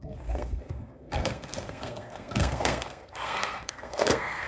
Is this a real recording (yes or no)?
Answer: no